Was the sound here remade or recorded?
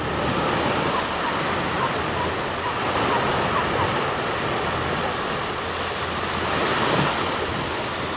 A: recorded